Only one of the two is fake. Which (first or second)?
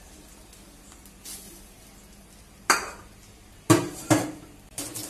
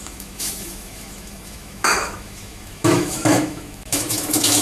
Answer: second